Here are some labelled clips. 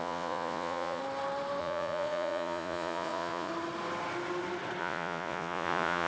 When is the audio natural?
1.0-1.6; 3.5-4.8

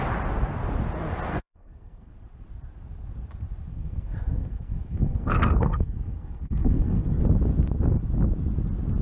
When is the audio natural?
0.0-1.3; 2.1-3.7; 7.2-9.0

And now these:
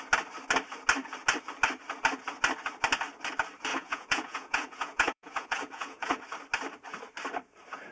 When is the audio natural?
0.0-3.7; 6.2-7.9

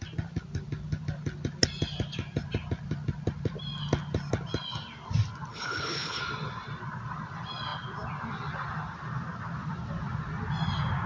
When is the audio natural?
0.0-5.5; 6.2-11.1

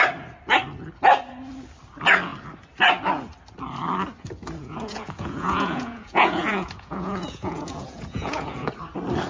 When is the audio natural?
0.0-4.6; 8.7-9.3

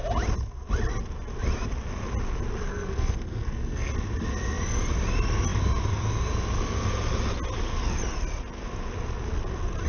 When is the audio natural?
0.0-2.7; 3.9-9.9

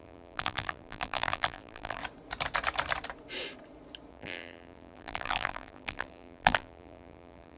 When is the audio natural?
2.0-4.1

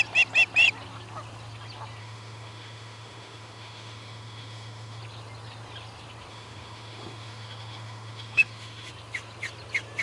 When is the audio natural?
0.0-2.0; 5.0-6.3; 8.9-10.0